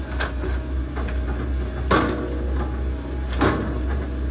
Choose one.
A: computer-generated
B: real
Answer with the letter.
B